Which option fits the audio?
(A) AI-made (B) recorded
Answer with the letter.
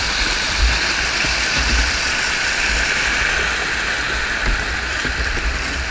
B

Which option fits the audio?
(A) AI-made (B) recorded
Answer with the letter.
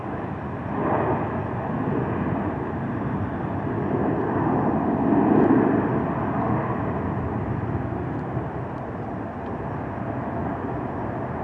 B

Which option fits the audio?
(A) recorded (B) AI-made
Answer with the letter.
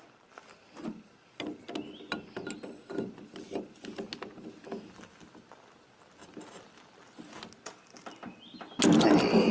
A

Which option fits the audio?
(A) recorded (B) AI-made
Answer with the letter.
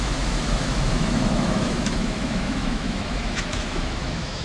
B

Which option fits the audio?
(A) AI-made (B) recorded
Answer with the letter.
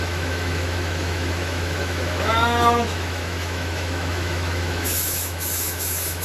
A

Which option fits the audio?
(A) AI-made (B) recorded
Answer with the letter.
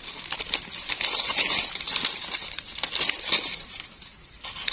B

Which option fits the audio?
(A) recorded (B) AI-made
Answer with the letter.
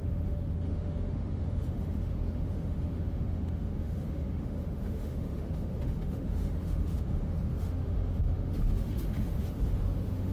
B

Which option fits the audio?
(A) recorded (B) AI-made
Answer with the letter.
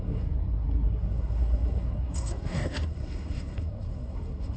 B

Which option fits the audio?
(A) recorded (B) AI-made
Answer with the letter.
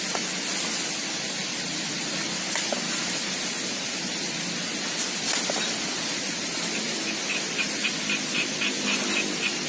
A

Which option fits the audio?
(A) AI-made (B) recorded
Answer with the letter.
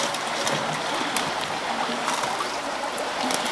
B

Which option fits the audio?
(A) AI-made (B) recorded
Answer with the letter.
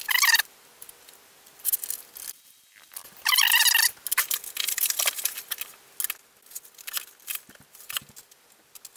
B